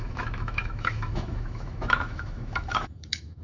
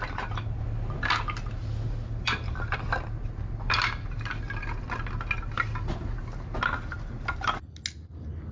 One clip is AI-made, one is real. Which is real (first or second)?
second